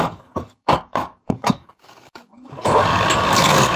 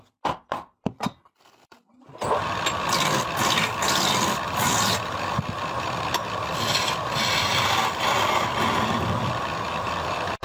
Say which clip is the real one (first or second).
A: second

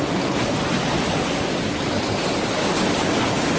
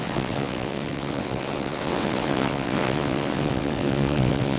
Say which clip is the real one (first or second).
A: first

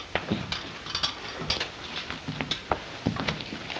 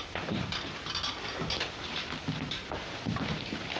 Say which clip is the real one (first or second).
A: first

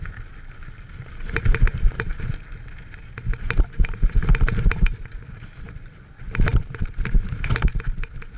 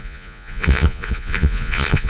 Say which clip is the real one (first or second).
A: first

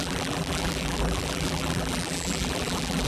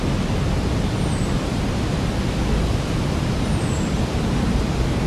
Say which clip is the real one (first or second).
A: second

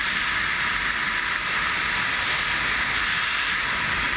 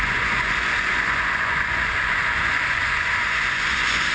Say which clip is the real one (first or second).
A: first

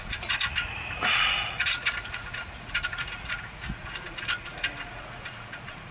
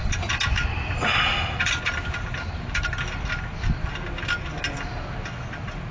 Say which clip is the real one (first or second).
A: second